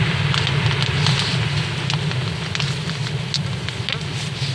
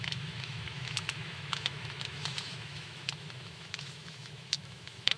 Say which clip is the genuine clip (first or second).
first